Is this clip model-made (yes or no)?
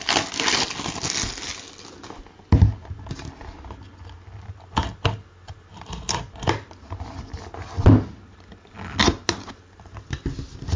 no